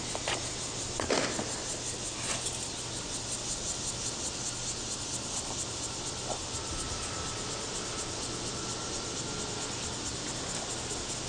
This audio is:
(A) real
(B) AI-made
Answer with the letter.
A